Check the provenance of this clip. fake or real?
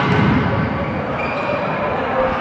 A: real